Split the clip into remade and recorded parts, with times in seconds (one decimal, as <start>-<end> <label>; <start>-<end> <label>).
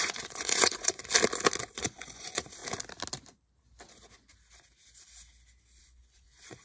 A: 0.0-1.0 remade; 1.0-1.6 recorded; 1.6-2.6 remade; 2.6-5.8 recorded; 5.8-6.6 remade